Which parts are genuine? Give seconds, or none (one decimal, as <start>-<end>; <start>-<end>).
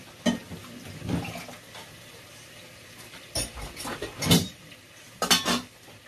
0.0-1.8; 5.2-6.1